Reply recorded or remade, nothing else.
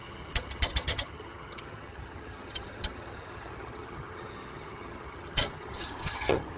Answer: remade